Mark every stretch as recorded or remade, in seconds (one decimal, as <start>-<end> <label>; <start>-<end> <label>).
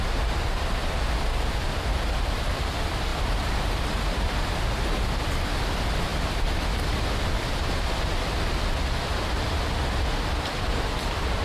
0.0-6.1 remade; 6.1-10.3 recorded; 10.3-11.4 remade